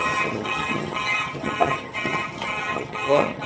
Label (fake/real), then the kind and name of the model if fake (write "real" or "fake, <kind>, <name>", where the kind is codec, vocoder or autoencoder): fake, vocoder, HiFi-GAN